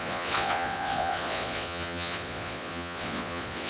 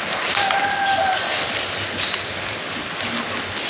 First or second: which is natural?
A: second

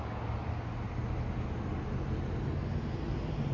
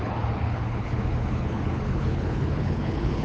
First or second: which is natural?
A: first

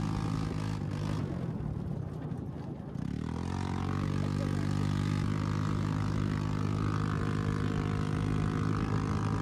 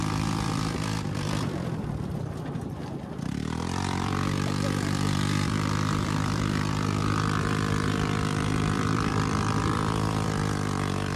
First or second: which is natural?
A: first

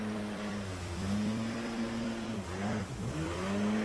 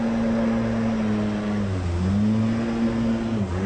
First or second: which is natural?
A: second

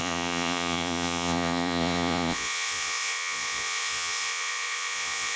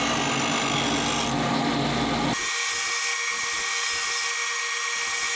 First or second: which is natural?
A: second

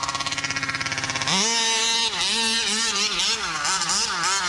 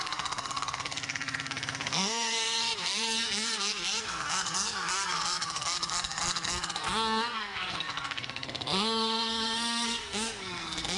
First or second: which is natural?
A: first